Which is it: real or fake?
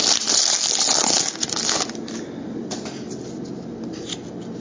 real